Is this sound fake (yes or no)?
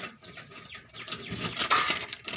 no